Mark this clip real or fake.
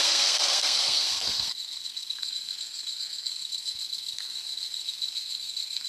fake